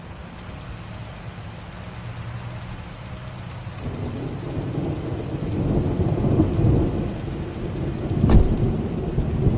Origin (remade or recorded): recorded